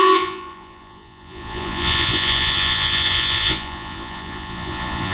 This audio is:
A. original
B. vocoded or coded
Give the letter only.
B